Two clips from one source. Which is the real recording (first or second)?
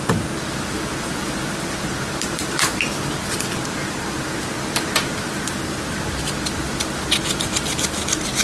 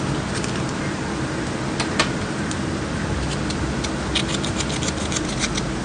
second